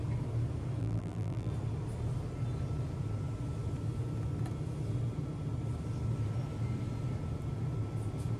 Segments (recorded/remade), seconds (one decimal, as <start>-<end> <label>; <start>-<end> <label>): 0.0-0.8 recorded; 0.8-1.5 remade; 1.5-8.4 recorded